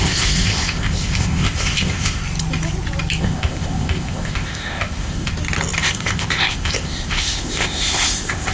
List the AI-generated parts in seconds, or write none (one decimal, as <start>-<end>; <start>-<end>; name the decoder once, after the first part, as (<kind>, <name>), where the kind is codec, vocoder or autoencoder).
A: 0.0-2.2 (codec, ZipCodec); 3.2-5.3; 5.8-8.5